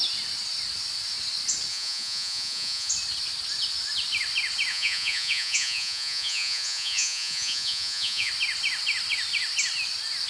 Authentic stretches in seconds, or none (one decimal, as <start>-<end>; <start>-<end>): 0.0-1.7; 2.9-4.7; 8.3-10.3